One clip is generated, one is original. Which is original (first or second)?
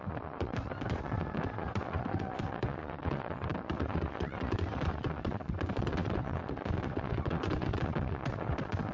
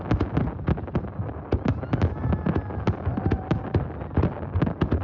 second